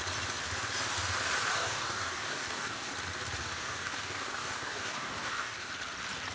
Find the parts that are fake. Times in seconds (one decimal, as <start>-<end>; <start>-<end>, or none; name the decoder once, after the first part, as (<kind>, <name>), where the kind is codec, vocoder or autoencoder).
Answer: 1.5-2.9 (codec, DAC); 3.4-5.7

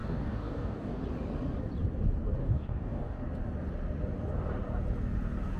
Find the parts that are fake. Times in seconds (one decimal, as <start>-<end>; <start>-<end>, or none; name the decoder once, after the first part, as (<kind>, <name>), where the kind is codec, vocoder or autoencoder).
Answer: 0.0-1.0 (codec, DAC); 2.4-3.2

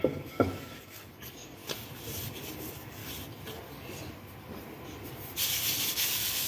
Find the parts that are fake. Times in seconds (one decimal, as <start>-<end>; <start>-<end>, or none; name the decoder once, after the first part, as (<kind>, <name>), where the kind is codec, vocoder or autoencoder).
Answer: 0.0-1.6 (codec, DAC); 2.6-3.0; 5.9-6.5

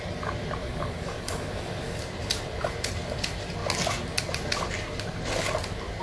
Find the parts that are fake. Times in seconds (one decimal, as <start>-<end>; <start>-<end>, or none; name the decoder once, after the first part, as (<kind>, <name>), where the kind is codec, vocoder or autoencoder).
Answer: 0.6-2.0 (codec, DAC)

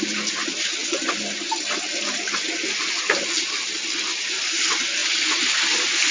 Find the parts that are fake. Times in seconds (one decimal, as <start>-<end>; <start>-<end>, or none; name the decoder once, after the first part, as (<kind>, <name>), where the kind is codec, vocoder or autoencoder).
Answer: none

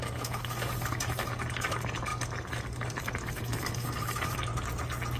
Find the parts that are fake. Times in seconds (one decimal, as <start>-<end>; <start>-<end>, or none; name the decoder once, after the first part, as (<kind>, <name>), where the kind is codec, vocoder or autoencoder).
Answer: 0.0-4.5 (codec, DAC)